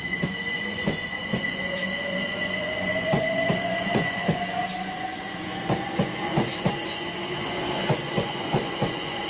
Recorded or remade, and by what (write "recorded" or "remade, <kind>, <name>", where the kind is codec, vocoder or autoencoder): remade, vocoder, Vocos